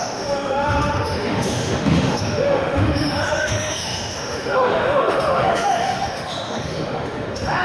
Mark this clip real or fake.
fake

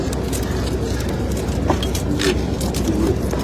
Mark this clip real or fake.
real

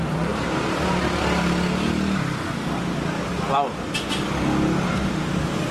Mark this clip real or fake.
real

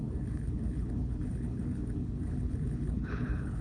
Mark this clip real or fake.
fake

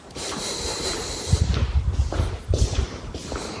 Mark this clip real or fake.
fake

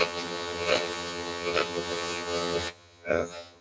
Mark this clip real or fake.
fake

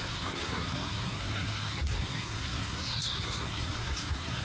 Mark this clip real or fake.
fake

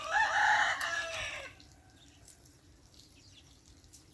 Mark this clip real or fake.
fake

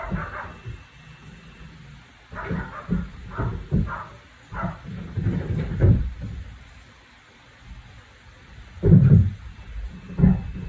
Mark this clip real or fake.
real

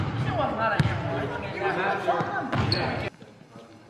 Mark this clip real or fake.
real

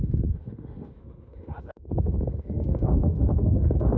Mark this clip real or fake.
fake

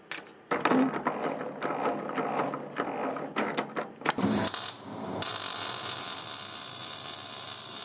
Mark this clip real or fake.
real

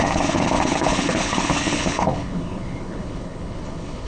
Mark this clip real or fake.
fake